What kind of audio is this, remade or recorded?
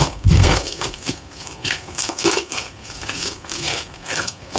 remade